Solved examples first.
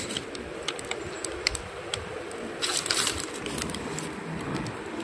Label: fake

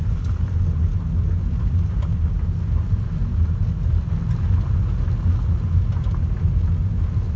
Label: real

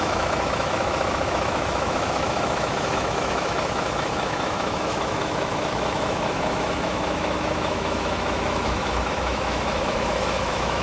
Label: fake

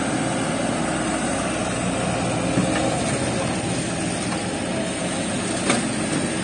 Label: real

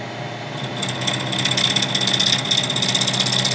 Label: real